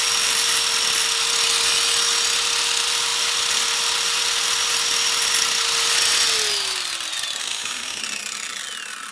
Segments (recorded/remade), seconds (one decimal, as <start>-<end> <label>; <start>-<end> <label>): 0.0-7.4 recorded; 7.4-8.0 remade; 8.0-9.1 recorded